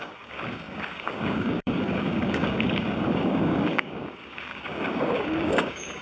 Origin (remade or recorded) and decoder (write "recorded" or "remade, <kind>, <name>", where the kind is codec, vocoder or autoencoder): remade, codec, DAC